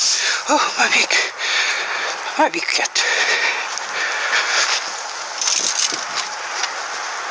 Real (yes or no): yes